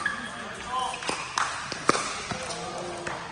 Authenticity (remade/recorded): recorded